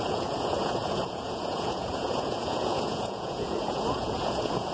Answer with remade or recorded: remade